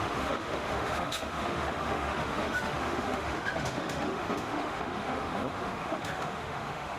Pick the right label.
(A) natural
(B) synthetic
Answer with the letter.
B